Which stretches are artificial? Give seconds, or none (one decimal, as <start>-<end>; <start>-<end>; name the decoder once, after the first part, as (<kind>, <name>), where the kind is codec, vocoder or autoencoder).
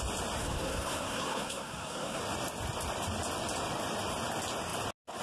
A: 0.4-2.2 (codec, SNAC)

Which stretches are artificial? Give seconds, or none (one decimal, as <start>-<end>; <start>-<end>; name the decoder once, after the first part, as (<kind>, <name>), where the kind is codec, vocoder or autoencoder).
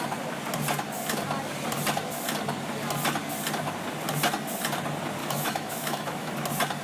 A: 5.2-6.3 (autoencoder, DAC-VAE)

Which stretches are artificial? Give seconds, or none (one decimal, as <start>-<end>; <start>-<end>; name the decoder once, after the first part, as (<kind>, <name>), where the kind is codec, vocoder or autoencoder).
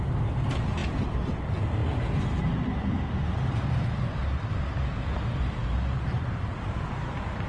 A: none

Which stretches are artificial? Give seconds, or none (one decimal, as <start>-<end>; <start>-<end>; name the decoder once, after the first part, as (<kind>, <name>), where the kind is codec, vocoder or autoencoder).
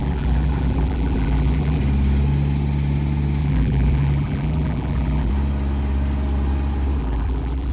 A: 0.0-1.8 (vocoder, BigVGAN v2); 3.4-5.3; 7.0-7.7